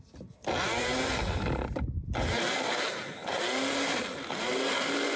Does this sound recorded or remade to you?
recorded